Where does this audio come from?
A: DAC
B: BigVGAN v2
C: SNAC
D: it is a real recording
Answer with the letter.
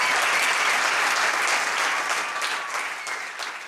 D